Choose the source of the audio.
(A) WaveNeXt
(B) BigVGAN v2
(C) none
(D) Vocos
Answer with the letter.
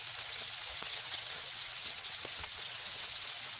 A